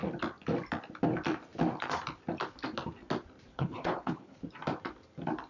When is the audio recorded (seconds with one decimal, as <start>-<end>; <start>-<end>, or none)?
0.0-3.5; 4.4-5.5